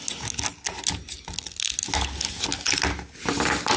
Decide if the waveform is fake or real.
real